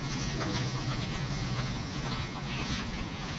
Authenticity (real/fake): fake